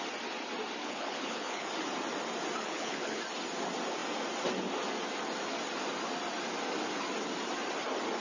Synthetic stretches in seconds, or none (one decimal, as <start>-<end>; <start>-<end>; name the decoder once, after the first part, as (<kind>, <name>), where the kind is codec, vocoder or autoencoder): 0.8-1.7 (codec, HILCodec); 2.6-3.2